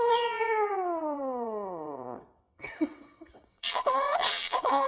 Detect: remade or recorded remade